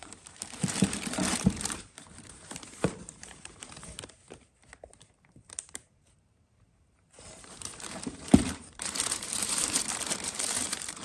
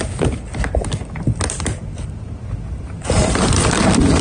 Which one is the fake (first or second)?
first